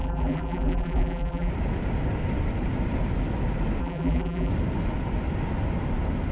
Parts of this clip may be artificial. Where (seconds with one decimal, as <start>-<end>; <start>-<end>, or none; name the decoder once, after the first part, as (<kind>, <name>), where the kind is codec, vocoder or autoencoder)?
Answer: 0.0-1.5 (vocoder, BigVGAN v2); 3.8-4.5